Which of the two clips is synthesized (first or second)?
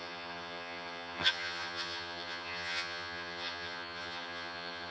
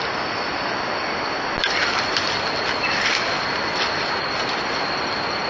first